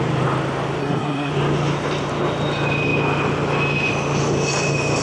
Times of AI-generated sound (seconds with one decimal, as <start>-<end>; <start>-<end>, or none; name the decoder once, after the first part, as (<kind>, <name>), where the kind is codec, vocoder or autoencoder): 0.8-1.3 (codec, SNAC)